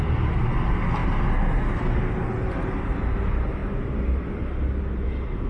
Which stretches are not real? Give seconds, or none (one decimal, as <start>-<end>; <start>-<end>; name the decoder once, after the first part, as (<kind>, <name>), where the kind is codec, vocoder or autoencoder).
none